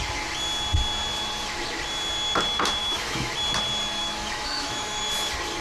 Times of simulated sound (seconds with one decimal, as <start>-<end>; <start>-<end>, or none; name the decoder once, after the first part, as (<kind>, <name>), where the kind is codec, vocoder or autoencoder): 2.8-3.3 (autoencoder, DAC-VAE); 4.0-5.0